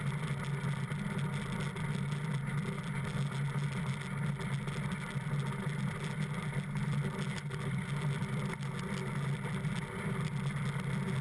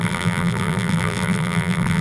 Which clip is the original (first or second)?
first